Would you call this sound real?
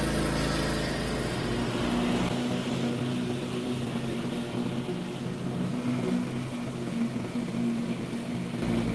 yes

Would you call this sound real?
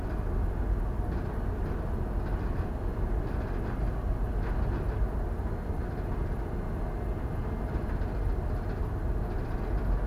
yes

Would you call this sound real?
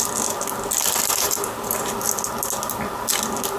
yes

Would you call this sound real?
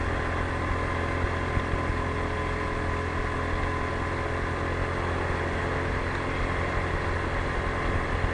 yes